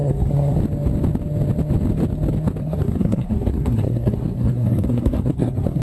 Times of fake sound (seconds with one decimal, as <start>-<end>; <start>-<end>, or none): 0.0-0.6; 2.6-5.8